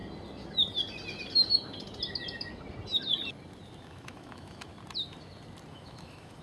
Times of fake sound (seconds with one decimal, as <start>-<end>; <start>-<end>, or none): 3.8-4.7; 5.7-6.4